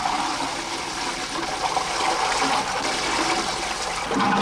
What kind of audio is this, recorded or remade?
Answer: recorded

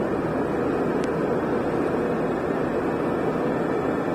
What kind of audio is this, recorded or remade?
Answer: recorded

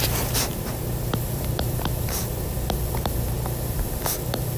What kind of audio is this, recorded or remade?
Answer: remade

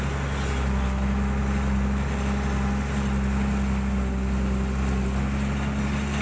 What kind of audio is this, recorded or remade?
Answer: recorded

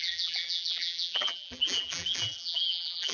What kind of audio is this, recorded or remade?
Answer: remade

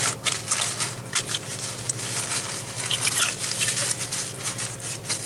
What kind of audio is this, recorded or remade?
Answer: recorded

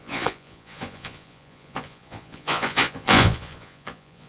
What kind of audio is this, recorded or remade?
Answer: remade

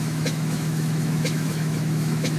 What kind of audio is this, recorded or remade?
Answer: remade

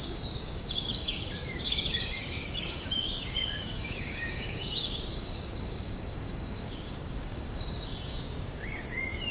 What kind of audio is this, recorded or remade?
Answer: remade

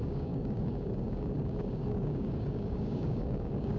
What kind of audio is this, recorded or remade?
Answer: remade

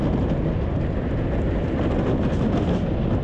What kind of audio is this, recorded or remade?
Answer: recorded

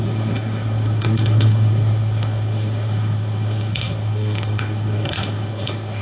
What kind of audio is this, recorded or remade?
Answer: remade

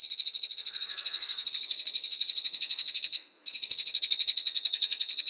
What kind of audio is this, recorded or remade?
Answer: remade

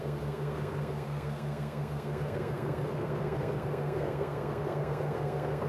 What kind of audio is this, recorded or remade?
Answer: remade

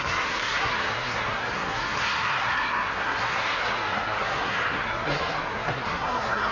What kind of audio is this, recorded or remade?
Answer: remade